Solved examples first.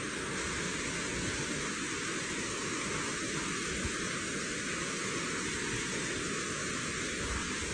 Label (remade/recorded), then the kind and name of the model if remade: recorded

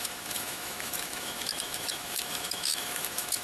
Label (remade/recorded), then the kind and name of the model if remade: remade, autoencoder, DAC-VAE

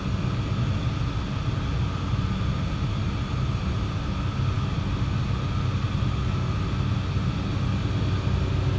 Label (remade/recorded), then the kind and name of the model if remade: recorded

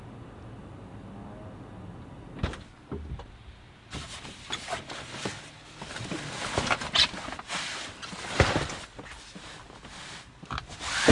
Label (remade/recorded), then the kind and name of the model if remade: recorded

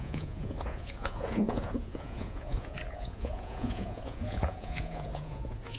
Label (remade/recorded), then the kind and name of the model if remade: remade, vocoder, Vocos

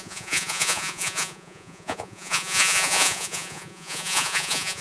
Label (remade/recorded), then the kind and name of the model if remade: remade, vocoder, Vocos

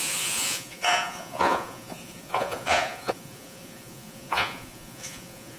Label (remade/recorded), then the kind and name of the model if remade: remade, vocoder, Vocos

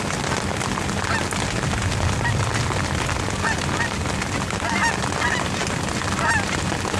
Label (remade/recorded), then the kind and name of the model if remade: recorded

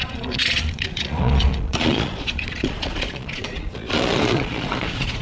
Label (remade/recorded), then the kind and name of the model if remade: remade, vocoder, Vocos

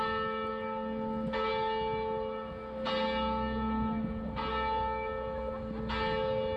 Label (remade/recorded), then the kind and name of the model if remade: recorded